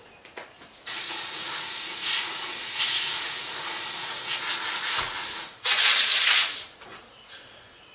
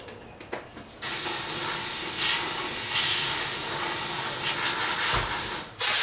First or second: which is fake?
first